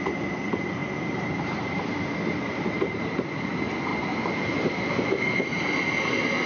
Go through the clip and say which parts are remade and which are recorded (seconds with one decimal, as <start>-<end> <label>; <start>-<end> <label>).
0.0-3.9 remade; 3.9-5.2 recorded; 5.2-6.5 remade